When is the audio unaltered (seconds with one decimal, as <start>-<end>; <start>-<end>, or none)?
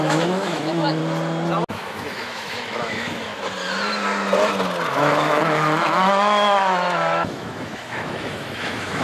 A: 1.0-1.7; 3.3-4.9